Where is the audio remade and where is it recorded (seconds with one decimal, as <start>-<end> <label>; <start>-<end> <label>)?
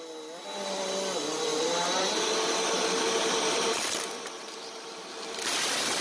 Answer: 0.0-1.5 recorded; 1.5-5.1 remade; 5.1-6.0 recorded